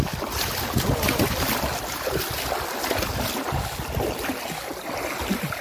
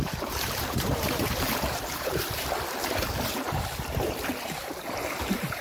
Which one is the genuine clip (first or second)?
first